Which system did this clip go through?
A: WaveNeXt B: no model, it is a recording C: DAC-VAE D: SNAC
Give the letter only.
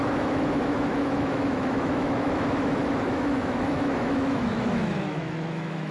C